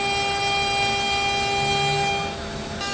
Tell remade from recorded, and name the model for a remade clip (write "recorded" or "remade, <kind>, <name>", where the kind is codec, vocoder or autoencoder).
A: recorded